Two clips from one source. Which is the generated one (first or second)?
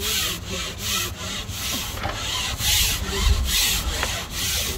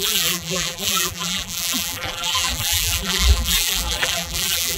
second